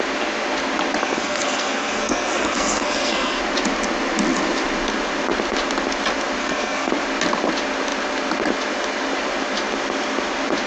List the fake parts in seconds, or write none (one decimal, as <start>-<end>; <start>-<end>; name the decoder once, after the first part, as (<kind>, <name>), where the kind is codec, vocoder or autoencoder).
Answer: 1.0-3.4 (codec, SNAC); 6.4-6.9